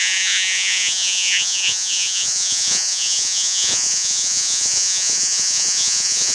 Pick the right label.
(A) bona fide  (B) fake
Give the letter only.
B